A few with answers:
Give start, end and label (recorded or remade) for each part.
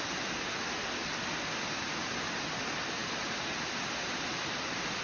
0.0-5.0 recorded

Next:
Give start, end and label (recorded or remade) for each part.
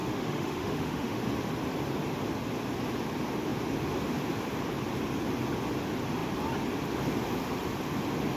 0.0-1.2 remade; 1.2-8.4 recorded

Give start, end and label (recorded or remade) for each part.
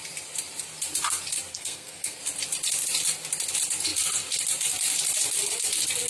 0.0-1.5 recorded; 1.5-2.2 remade; 2.2-6.1 recorded